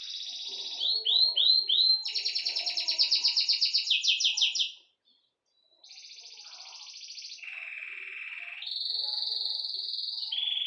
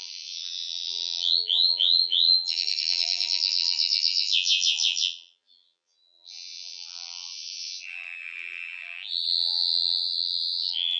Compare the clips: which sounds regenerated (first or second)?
second